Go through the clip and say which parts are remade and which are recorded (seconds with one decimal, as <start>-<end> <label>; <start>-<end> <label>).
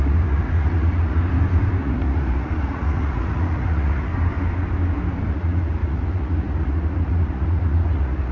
0.0-1.3 remade; 1.3-1.8 recorded; 1.8-4.1 remade; 4.1-5.3 recorded; 5.3-8.3 remade